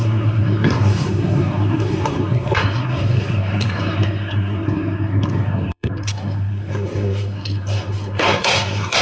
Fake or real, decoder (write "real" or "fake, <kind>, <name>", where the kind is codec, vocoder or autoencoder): fake, codec, SNAC